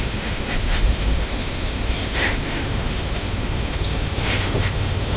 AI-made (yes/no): yes